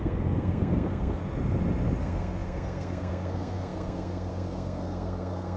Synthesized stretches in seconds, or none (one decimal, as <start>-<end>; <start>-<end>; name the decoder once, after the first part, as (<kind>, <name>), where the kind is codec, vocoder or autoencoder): 0.0-1.2 (codec, SNAC); 2.0-5.6

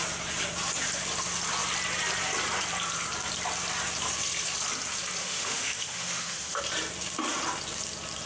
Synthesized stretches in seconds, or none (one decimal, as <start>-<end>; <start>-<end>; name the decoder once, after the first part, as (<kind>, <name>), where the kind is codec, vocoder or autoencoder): 5.2-6.6 (autoencoder, DAC-VAE)

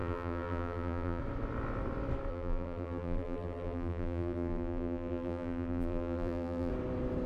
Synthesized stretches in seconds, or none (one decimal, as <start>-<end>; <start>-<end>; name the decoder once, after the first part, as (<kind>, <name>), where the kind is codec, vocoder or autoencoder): 0.0-1.2 (vocoder, BigVGAN v2); 2.3-6.7

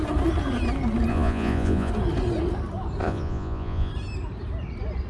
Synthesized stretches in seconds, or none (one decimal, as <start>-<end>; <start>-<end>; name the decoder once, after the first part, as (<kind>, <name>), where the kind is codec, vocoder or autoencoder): 1.1-1.9 (vocoder, Vocos); 3.0-3.9

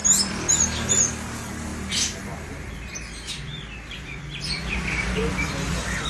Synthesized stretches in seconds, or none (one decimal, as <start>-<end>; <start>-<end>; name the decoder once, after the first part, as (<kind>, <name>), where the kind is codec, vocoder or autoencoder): 0.0-6.1 (vocoder, BigVGAN v2)